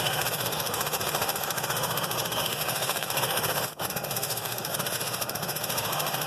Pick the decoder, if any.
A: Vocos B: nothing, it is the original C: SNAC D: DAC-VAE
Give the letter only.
D